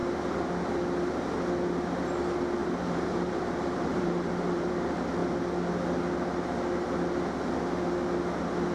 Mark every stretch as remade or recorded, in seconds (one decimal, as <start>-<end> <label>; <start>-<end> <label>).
0.0-2.6 recorded; 2.6-4.7 remade; 4.7-8.7 recorded